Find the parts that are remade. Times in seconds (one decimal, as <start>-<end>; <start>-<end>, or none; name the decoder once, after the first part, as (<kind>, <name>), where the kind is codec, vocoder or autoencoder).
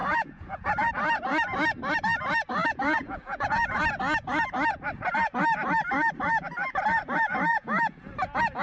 0.0-0.9 (vocoder, Vocos); 2.6-3.8; 7.5-8.1